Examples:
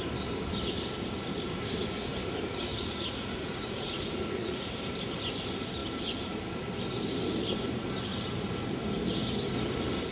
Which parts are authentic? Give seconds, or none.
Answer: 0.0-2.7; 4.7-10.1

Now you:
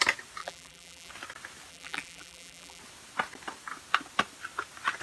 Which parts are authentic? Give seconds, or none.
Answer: 0.0-0.4; 1.1-1.7; 2.8-5.0

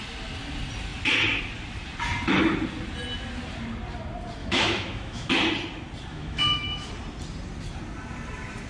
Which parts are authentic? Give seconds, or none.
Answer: 0.0-4.4; 5.3-6.1; 6.9-8.7

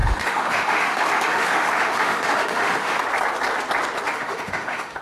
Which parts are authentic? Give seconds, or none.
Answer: 3.0-4.1

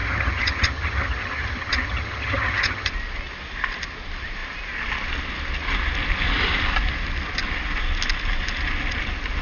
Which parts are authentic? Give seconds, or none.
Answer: 2.9-9.4

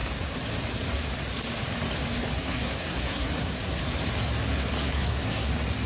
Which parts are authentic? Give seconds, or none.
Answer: 0.0-2.4; 3.8-4.8; 5.5-5.9

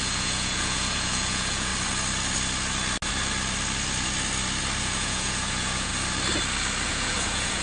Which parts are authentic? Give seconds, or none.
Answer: 1.7-4.8; 5.9-6.9